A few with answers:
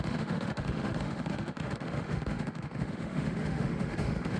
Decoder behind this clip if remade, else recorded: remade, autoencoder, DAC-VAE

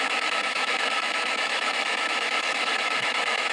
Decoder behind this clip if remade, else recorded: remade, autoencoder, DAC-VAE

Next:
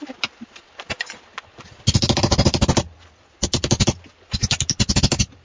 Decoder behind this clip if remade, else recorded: recorded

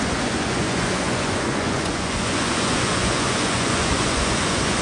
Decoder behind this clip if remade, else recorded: remade, vocoder, Vocos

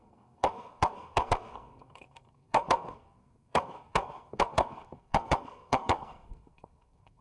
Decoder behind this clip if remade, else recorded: remade, codec, SNAC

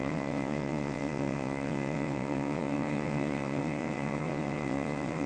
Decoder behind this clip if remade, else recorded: remade, vocoder, WaveNeXt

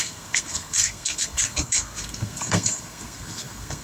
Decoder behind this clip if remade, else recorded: remade, codec, SNAC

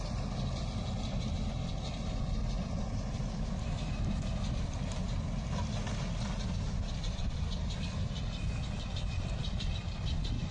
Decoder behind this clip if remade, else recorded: remade, vocoder, BigVGAN v2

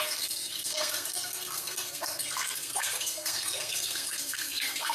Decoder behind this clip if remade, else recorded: remade, codec, SNAC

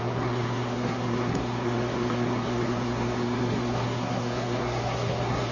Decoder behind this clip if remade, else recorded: remade, codec, SNAC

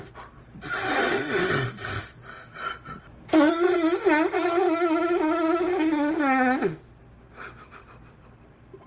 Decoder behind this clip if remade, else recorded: recorded